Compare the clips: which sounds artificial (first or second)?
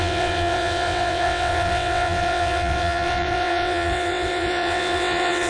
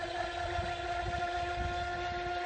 first